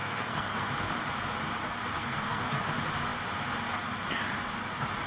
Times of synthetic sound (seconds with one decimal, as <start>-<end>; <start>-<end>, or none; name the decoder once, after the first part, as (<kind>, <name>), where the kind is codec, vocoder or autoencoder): 0.0-0.7 (codec, SNAC); 1.9-2.6